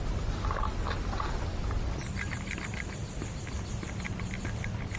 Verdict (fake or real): fake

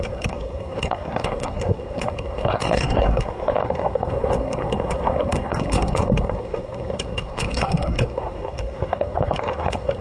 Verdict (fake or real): fake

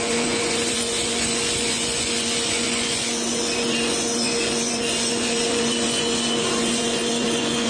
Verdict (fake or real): fake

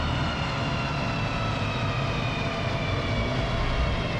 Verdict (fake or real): real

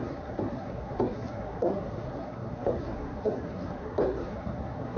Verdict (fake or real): fake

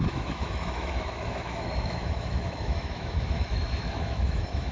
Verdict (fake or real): fake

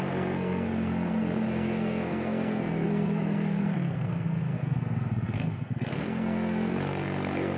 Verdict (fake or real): fake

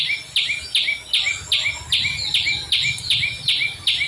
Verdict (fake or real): real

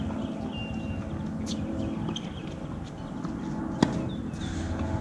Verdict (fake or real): real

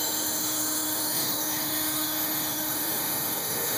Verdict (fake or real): fake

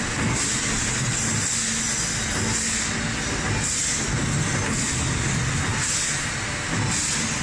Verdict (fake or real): real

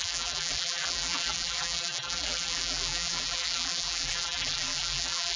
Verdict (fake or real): fake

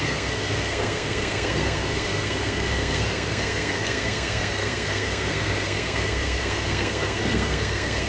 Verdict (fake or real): fake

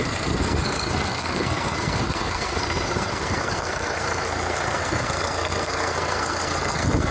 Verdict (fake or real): fake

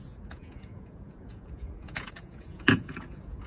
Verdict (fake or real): fake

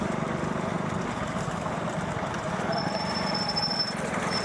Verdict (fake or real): fake